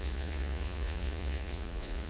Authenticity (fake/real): fake